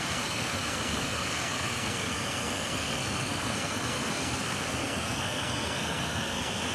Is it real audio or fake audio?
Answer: fake